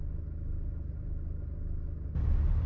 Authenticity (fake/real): fake